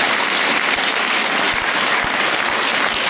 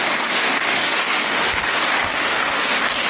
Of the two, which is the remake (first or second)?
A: second